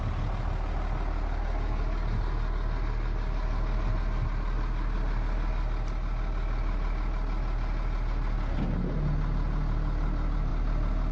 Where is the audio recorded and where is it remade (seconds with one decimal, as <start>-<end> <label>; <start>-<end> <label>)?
0.0-11.1 recorded